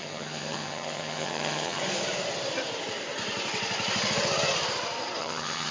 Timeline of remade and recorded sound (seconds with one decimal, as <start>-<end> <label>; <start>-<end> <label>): 0.0-1.8 remade; 1.8-5.2 recorded; 5.2-5.7 remade